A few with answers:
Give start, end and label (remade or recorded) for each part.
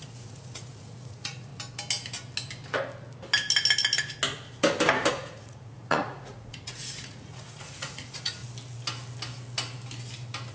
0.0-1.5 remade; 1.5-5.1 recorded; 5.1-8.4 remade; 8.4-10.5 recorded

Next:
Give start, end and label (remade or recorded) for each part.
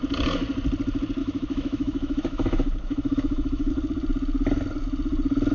0.0-1.2 recorded; 1.2-3.7 remade; 3.7-5.5 recorded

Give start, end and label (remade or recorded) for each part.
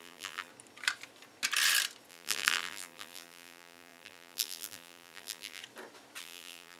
0.0-0.5 remade; 0.5-2.1 recorded; 2.1-5.6 remade; 5.6-6.2 recorded; 6.2-6.8 remade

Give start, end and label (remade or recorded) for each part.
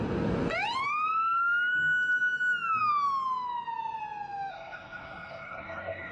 0.0-4.5 recorded; 4.5-6.1 remade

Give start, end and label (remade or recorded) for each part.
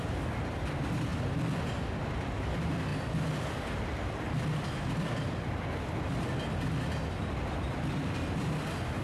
0.0-9.0 recorded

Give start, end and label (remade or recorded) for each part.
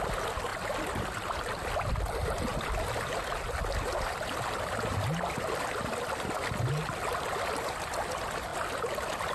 0.0-9.3 recorded